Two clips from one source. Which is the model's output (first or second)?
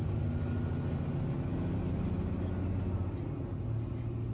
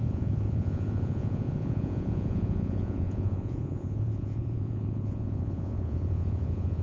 second